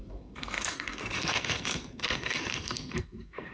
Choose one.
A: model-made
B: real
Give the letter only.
A